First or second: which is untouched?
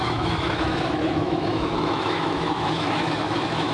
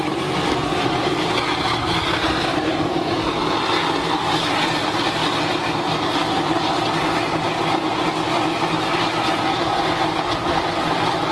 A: second